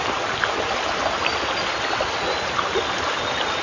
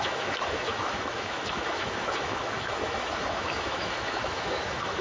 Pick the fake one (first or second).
second